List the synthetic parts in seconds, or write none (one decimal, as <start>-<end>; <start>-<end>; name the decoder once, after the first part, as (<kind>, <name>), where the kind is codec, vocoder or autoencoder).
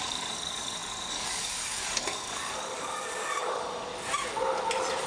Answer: 0.0-3.9 (codec, DAC)